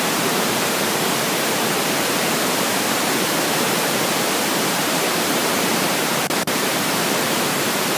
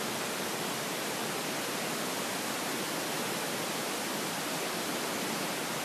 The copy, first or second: first